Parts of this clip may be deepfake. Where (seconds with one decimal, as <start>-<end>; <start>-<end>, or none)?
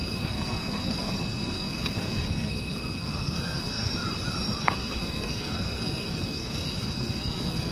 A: 0.0-3.9; 4.6-7.7